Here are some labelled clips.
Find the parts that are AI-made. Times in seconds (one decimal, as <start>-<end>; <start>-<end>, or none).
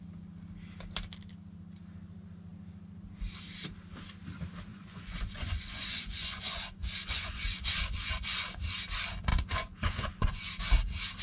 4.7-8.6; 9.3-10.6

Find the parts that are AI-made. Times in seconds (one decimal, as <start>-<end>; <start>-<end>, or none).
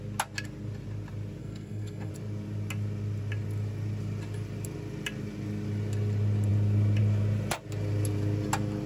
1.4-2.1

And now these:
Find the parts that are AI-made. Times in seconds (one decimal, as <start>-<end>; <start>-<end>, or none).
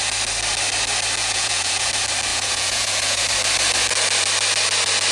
1.2-1.9; 2.3-3.2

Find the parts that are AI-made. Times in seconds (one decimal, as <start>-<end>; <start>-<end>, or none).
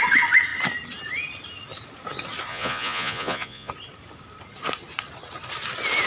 2.5-3.7